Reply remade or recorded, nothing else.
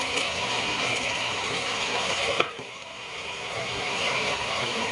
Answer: remade